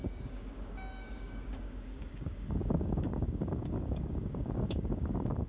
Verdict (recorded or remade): remade